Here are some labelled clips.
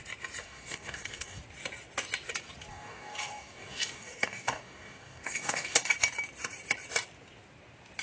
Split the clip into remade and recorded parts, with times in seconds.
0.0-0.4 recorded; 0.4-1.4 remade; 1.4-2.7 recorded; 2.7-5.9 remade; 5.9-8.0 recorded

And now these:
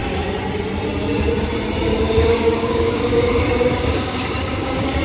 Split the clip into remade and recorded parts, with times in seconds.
0.0-1.9 recorded; 1.9-5.0 remade

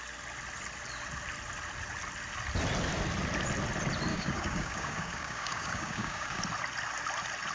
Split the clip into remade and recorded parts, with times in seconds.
0.0-4.1 recorded; 4.1-6.4 remade; 6.4-7.5 recorded

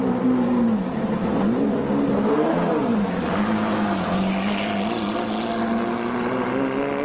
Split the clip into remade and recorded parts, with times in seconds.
0.0-7.0 recorded

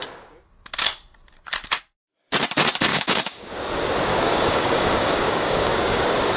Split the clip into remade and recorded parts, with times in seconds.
0.0-2.9 recorded; 2.9-3.5 remade; 3.5-4.1 recorded; 4.1-6.0 remade; 6.0-6.4 recorded